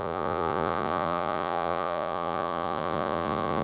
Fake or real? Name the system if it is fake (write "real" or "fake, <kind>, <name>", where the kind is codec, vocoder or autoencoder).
fake, vocoder, Vocos